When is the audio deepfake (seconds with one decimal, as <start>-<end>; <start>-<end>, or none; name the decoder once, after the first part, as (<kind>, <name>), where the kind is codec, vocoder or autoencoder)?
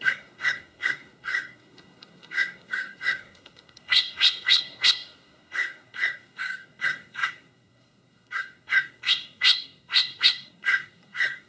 0.0-11.5 (codec, SNAC)